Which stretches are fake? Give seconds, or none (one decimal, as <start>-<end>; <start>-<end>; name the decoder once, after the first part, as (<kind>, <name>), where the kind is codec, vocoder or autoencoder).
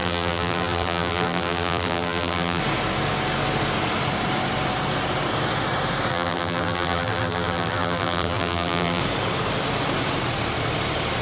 0.0-2.6 (vocoder, BigVGAN v2); 6.1-9.0